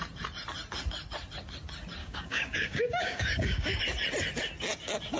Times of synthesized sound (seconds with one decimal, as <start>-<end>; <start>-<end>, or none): 2.0-3.8